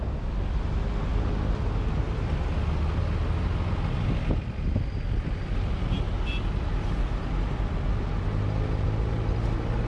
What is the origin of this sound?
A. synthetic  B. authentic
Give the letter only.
B